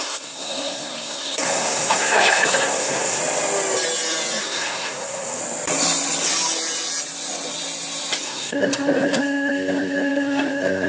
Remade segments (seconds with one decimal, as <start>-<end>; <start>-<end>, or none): 0.0-3.2; 4.4-5.4; 8.2-10.9

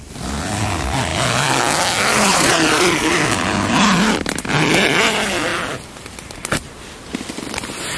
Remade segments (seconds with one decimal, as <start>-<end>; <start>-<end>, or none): 2.3-3.1

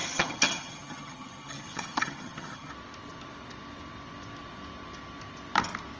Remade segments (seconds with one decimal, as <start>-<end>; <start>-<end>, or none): 0.0-2.7

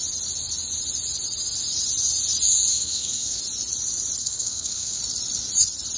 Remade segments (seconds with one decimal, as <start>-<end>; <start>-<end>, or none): 2.7-3.4; 4.2-5.0

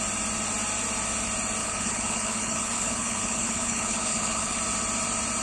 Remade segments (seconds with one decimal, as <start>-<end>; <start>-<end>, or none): 1.6-4.6

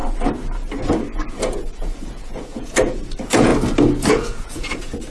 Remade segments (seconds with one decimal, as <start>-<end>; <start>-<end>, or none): 1.3-3.5; 4.1-5.1

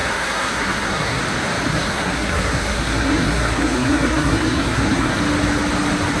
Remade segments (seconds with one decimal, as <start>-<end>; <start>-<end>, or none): 0.0-1.2; 1.7-5.2

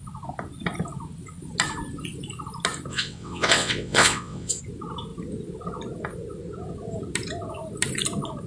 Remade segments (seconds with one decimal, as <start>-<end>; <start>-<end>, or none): 2.9-4.6